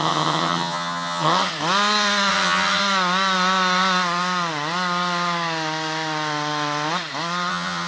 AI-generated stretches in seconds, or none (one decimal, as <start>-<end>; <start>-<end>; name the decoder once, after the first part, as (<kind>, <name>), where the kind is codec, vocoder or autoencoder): 0.0-1.5 (vocoder, HiFi-GAN); 2.3-2.8; 7.5-7.9